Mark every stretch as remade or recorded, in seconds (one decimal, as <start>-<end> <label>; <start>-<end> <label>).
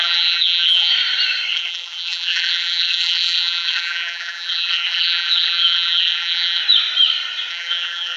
0.0-0.9 remade; 0.9-1.5 recorded; 1.5-6.6 remade; 6.6-7.5 recorded; 7.5-8.2 remade